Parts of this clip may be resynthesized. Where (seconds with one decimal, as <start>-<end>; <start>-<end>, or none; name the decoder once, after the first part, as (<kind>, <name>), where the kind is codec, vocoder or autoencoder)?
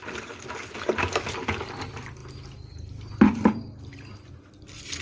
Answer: none